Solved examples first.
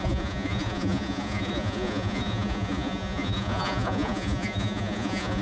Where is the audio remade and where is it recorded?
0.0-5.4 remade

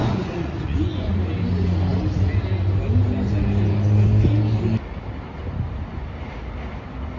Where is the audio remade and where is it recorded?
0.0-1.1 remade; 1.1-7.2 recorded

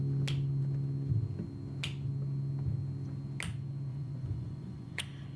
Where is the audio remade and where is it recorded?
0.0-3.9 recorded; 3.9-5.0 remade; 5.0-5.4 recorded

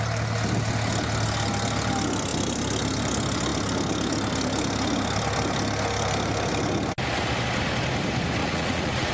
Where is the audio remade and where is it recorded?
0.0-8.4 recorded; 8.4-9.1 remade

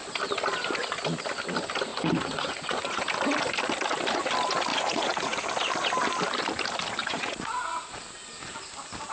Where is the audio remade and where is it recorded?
0.0-1.9 recorded; 1.9-3.1 remade; 3.1-4.7 recorded; 4.7-5.4 remade; 5.4-7.0 recorded; 7.0-8.0 remade; 8.0-9.1 recorded

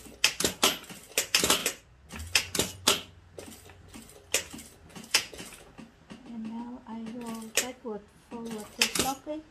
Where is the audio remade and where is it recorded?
0.0-4.9 recorded; 4.9-5.7 remade; 5.7-8.9 recorded; 8.9-9.5 remade

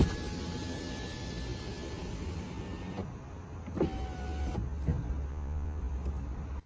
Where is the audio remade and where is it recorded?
0.0-5.3 recorded; 5.3-5.8 remade; 5.8-6.7 recorded

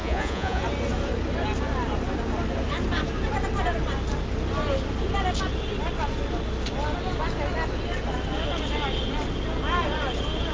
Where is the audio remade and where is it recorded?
0.0-0.6 remade; 0.6-10.5 recorded